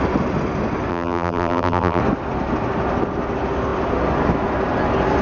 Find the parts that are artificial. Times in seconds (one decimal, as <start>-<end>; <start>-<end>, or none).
0.9-2.0